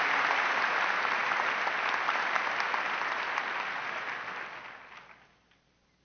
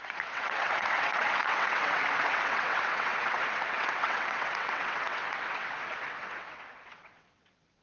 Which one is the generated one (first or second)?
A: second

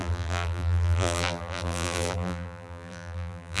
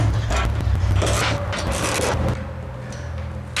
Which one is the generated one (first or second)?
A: first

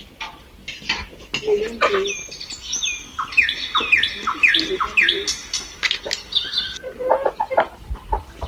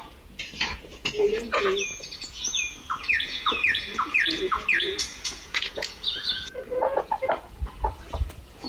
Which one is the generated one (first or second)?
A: second